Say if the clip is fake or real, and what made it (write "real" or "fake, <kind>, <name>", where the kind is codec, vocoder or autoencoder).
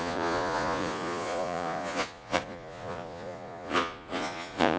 fake, vocoder, Vocos